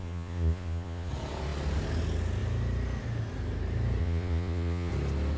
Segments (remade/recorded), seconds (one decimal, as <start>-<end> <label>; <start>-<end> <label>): 0.0-1.1 remade; 1.1-4.0 recorded; 4.0-4.9 remade; 4.9-5.4 recorded